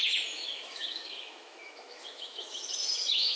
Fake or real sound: fake